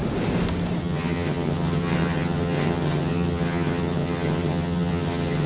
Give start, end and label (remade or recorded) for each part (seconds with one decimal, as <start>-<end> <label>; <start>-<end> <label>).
0.0-0.8 recorded; 0.8-5.5 remade